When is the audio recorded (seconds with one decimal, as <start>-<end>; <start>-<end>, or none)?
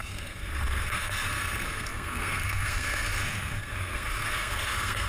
none